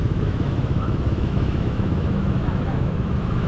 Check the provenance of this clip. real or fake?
fake